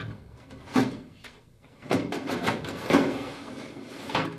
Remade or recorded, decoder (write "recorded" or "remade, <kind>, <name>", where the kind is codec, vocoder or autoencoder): remade, codec, SNAC